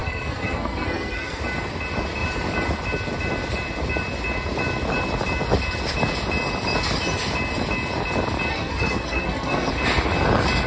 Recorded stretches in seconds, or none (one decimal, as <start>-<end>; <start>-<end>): 1.4-8.5; 9.7-10.7